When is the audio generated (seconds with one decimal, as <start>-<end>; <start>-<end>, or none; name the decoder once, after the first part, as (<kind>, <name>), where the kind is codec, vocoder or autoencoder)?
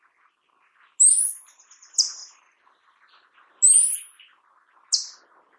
none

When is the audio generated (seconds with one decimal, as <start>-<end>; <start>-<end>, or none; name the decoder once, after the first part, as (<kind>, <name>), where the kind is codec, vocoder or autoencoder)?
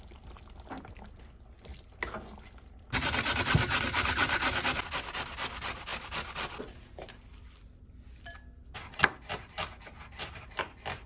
none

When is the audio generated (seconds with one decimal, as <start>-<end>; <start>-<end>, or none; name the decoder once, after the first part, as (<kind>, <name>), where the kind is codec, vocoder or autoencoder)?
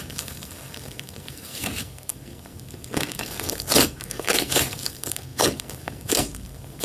0.0-6.8 (codec, SNAC)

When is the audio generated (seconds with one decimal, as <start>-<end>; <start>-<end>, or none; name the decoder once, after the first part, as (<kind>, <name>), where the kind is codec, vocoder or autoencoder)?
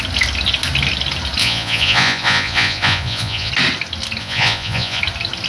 1.4-3.5 (vocoder, Vocos); 4.2-5.0